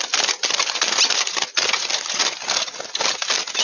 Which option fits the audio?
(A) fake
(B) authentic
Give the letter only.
B